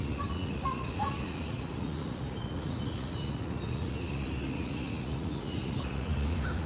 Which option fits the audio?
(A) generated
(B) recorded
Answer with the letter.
A